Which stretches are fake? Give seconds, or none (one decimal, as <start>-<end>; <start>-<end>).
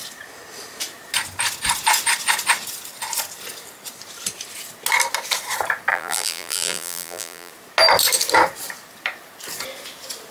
5.9-7.5